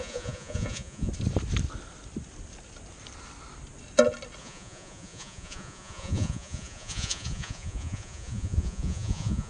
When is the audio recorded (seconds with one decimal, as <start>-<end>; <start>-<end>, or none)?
1.1-4.4